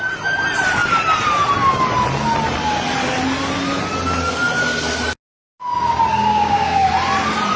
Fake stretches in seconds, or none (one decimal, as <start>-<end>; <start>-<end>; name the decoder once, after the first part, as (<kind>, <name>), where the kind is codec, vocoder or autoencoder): 6.2-6.9 (codec, DAC)